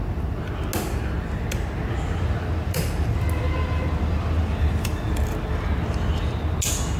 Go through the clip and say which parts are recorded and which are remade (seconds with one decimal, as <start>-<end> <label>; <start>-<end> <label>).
0.0-4.4 recorded; 4.4-5.3 remade; 5.3-7.0 recorded